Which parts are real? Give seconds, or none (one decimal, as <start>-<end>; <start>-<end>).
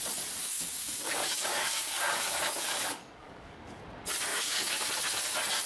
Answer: 0.0-0.4; 3.8-4.3; 4.9-5.7